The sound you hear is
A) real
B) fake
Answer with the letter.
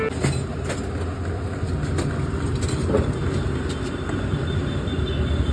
A